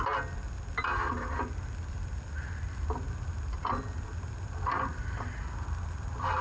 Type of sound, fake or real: real